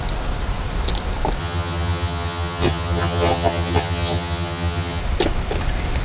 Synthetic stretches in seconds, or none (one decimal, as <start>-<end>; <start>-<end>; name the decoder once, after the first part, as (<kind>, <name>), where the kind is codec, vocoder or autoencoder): 1.4-5.0 (vocoder, HiFi-GAN)